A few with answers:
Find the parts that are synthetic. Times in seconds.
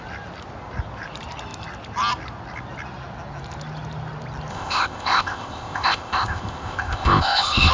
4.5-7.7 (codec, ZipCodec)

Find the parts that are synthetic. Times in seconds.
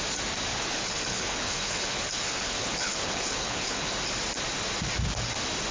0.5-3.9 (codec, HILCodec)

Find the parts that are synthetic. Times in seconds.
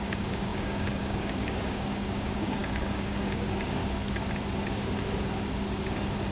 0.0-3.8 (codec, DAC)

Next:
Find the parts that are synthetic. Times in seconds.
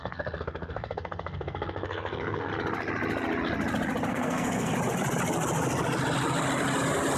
0.0-2.5 (codec, SNAC); 4.1-4.7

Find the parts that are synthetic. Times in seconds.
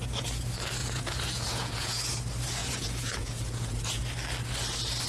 0.8-2.1 (vocoder, Vocos); 2.6-4.0